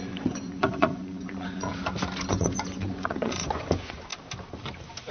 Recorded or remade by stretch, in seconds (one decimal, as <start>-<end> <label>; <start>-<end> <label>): 0.0-1.7 remade; 1.7-2.3 recorded; 2.3-4.1 remade; 4.1-5.1 recorded